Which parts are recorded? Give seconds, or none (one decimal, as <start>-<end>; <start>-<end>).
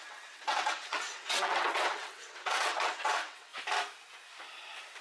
3.5-5.0